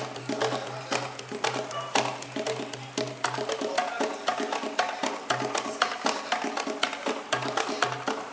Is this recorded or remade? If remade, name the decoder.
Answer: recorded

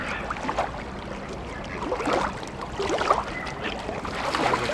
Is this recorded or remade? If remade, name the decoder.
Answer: recorded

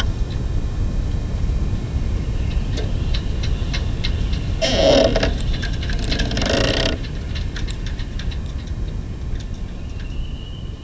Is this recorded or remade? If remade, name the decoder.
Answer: recorded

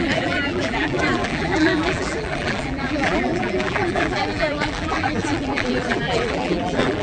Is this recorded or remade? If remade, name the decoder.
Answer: remade, vocoder, BigVGAN v2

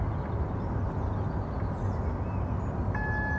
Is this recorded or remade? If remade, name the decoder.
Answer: recorded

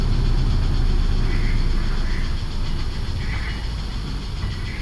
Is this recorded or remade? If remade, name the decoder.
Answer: recorded